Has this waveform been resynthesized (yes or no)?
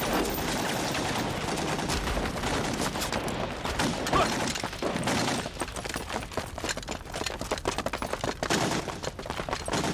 no